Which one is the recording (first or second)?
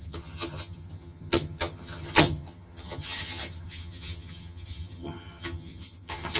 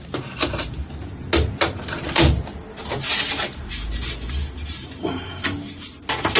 second